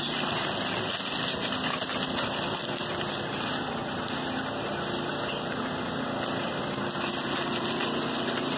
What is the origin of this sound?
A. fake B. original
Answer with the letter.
B